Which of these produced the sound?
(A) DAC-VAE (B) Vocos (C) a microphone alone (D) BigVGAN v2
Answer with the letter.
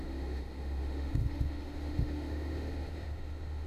A